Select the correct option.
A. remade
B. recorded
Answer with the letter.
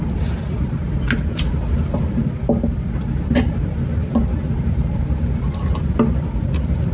B